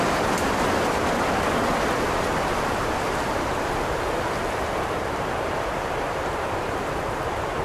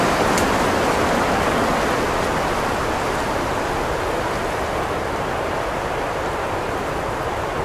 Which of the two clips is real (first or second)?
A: second